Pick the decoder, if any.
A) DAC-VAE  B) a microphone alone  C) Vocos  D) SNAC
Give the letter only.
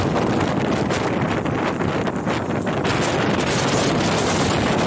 B